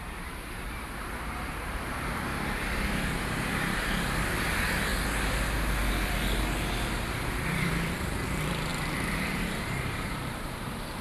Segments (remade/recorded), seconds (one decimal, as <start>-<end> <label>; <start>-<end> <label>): 0.0-2.3 remade; 2.3-2.9 recorded; 2.9-4.9 remade; 4.9-7.9 recorded; 7.9-11.0 remade